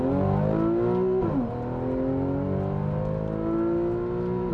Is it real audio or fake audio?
real